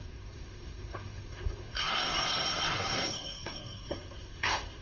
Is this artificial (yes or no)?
yes